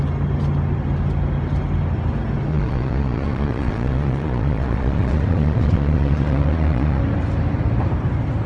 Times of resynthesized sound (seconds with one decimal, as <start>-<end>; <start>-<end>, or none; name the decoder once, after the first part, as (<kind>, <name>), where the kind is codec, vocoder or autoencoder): 2.5-7.0 (vocoder, Vocos)